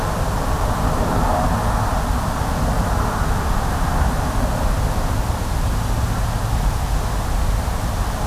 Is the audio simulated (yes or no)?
no